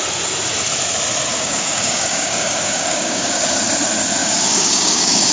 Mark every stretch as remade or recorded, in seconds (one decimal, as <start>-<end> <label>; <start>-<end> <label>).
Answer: 0.0-1.3 recorded; 1.3-3.4 remade; 3.4-4.2 recorded; 4.2-5.3 remade